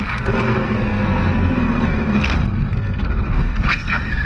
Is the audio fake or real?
fake